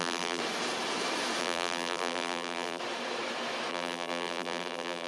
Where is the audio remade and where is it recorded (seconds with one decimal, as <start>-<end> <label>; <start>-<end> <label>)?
0.0-0.4 remade; 0.4-1.4 recorded; 1.4-2.8 remade; 2.8-3.7 recorded; 3.7-5.1 remade